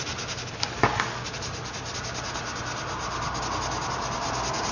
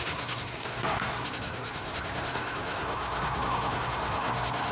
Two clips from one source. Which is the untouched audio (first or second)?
first